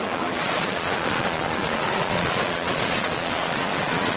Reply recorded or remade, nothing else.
remade